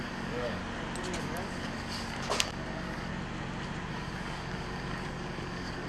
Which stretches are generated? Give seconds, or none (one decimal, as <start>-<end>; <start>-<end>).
0.0-0.6; 1.2-3.1; 3.9-5.9